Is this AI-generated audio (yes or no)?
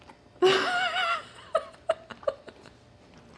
no